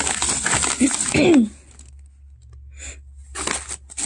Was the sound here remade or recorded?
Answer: recorded